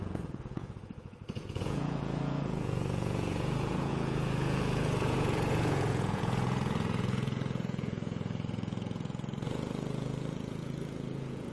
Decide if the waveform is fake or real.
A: fake